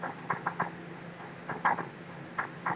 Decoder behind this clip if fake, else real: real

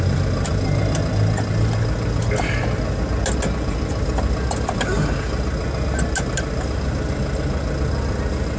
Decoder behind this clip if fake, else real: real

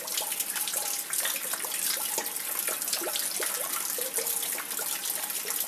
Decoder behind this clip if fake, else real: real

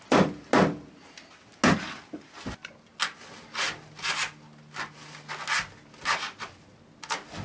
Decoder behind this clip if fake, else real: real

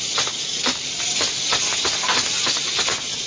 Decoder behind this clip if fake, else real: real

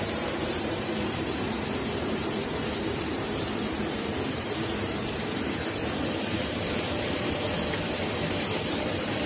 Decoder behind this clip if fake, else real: fake, vocoder, BigVGAN v2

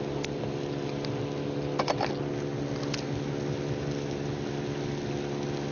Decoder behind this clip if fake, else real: real